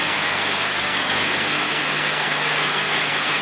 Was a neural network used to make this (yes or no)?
yes